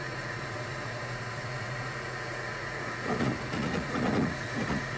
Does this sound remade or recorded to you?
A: remade